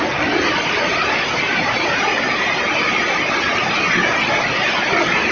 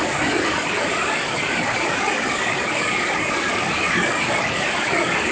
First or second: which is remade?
second